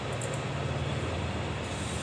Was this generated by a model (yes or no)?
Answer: no